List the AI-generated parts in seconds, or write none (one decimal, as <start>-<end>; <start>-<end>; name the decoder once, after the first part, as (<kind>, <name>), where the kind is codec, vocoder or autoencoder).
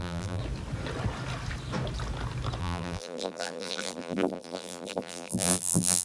0.0-0.4 (vocoder, BigVGAN v2); 2.6-6.0